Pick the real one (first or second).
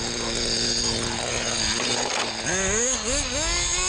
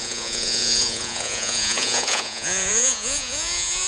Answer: first